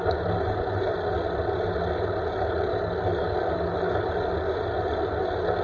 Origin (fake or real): real